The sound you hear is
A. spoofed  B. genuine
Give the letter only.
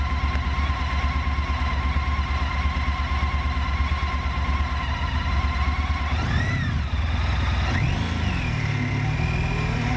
B